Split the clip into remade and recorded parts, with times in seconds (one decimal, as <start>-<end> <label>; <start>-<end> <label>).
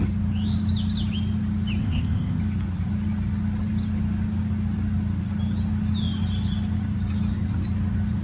0.0-1.8 recorded; 1.8-2.4 remade; 2.4-8.2 recorded